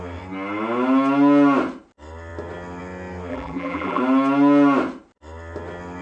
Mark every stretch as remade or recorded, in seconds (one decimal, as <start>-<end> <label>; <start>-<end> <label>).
0.0-3.3 recorded; 3.3-4.0 remade; 4.0-6.0 recorded